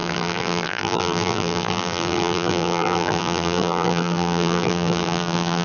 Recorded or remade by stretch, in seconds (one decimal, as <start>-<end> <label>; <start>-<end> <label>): 0.0-5.6 remade